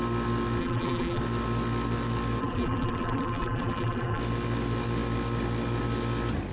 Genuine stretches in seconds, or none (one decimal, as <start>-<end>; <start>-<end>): 0.0-0.6; 1.2-2.4; 4.2-6.5